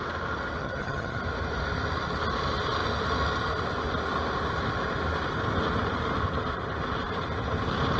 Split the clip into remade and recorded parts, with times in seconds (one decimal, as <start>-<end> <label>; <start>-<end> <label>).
0.0-0.6 recorded; 0.6-1.2 remade; 1.2-8.0 recorded